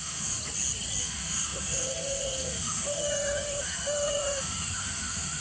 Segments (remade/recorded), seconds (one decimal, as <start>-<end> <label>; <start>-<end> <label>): 0.0-0.4 remade; 0.4-1.0 recorded; 1.0-5.4 remade